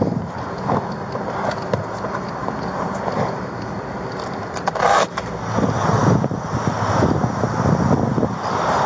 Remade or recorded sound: recorded